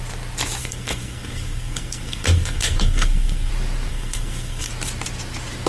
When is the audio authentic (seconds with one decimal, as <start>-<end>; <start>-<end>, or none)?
0.0-0.6; 3.5-3.9; 4.7-5.7